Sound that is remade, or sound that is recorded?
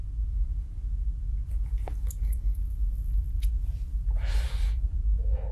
recorded